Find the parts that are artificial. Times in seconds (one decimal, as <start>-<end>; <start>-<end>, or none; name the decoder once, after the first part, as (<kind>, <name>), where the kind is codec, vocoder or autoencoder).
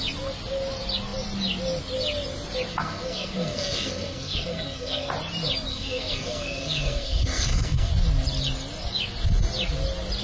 2.7-5.1 (codec, SNAC); 5.7-7.9